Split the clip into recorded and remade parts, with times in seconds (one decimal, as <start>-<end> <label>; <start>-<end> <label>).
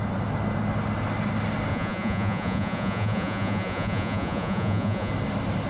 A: 0.0-1.7 recorded; 1.7-5.1 remade; 5.1-5.7 recorded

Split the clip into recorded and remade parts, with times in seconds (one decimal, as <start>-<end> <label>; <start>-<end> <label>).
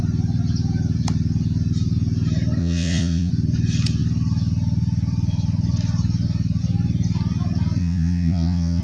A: 0.0-2.6 recorded; 2.6-3.3 remade; 3.3-7.8 recorded; 7.8-8.8 remade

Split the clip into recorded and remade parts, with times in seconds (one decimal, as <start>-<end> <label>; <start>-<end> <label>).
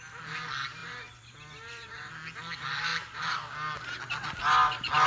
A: 0.0-0.8 recorded; 0.8-2.1 remade; 2.1-5.1 recorded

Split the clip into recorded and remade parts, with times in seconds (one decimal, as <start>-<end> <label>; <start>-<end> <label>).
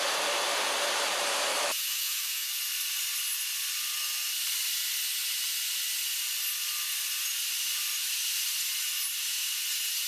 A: 0.0-1.5 recorded; 1.5-2.5 remade; 2.5-10.1 recorded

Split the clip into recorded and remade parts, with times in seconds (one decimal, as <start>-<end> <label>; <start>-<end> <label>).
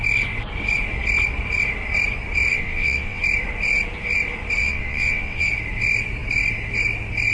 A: 0.0-2.5 recorded; 2.5-3.2 remade; 3.2-4.6 recorded; 4.6-5.5 remade; 5.5-7.3 recorded